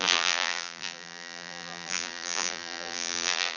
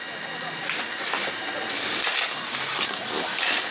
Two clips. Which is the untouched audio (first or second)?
second